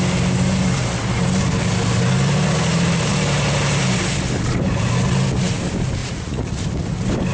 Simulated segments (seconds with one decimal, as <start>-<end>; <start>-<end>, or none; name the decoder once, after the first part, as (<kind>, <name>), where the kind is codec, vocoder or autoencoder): 6.0-6.6 (vocoder, Vocos)